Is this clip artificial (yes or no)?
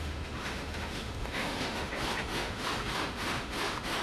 yes